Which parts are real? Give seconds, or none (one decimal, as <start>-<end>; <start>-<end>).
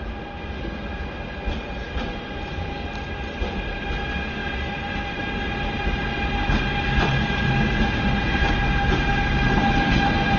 0.0-10.4